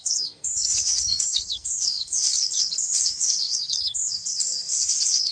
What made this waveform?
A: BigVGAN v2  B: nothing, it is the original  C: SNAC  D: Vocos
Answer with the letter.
C